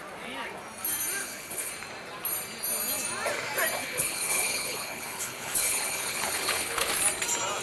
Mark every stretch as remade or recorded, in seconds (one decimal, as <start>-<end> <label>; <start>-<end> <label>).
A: 0.0-1.2 recorded; 1.2-1.7 remade; 1.7-3.8 recorded; 3.8-6.9 remade; 6.9-7.6 recorded